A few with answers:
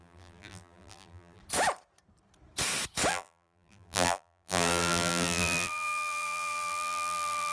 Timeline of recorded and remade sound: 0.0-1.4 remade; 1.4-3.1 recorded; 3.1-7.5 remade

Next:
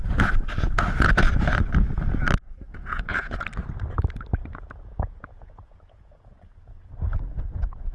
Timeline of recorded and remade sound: 0.0-2.7 recorded; 2.7-3.4 remade; 3.4-4.4 recorded; 4.4-6.9 remade; 6.9-7.9 recorded

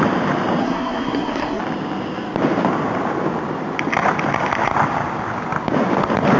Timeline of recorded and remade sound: 0.0-0.6 recorded; 0.6-1.6 remade; 1.6-6.4 recorded